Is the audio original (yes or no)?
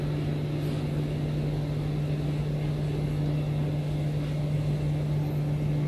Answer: yes